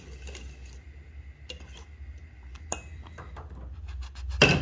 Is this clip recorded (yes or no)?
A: yes